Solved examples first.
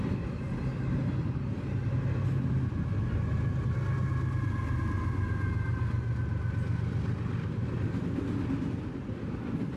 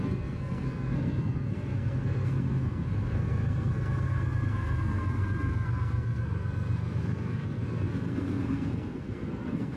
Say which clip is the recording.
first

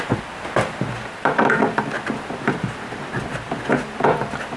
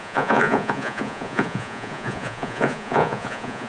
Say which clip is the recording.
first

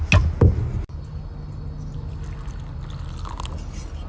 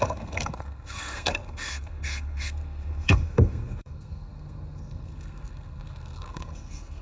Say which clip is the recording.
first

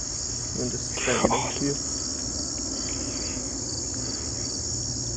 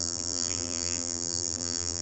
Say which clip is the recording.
first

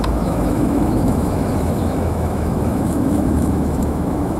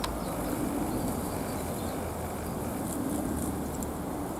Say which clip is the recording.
second